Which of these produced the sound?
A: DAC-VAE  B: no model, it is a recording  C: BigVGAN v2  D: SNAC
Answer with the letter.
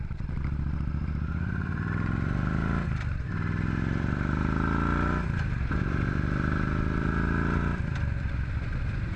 C